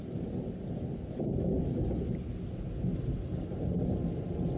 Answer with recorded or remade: recorded